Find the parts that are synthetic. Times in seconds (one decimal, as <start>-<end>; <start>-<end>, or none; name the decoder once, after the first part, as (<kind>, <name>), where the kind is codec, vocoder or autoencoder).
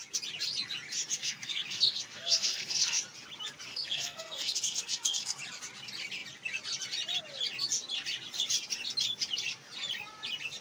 1.2-3.0 (codec, SNAC); 3.7-5.4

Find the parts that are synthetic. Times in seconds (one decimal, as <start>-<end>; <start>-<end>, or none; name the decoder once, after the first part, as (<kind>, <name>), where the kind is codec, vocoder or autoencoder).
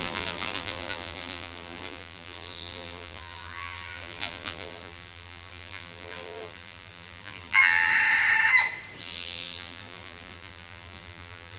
0.0-7.9 (vocoder, BigVGAN v2); 9.0-11.6